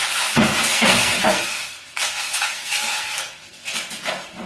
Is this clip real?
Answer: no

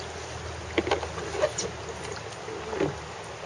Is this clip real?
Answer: yes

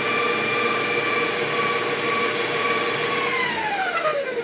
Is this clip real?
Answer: yes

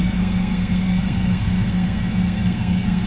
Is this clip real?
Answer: no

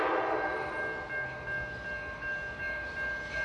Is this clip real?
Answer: yes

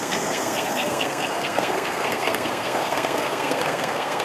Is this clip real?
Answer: no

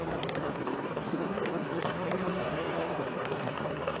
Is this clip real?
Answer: no